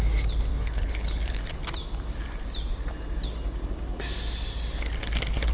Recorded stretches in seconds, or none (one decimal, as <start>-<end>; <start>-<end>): 0.0-0.5; 1.4-5.5